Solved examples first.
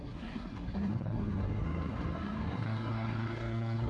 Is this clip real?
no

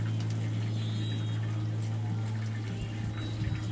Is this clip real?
yes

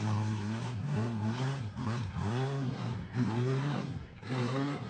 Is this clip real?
no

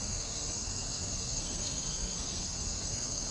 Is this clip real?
no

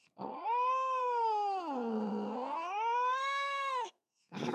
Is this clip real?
no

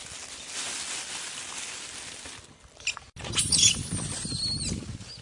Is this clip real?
yes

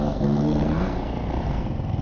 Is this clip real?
no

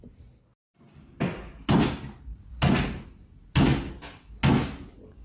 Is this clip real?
yes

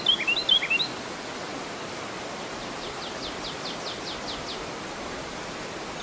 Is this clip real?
yes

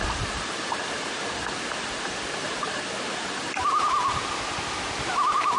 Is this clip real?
yes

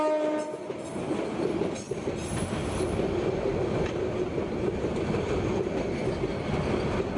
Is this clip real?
yes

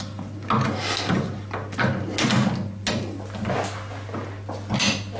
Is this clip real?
yes